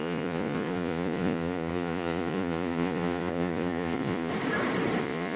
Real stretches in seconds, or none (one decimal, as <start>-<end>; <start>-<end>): 4.3-5.0